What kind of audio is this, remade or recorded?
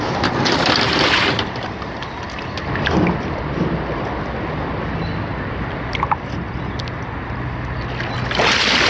recorded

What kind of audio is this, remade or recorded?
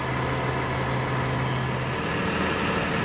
recorded